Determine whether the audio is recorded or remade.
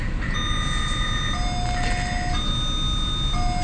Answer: recorded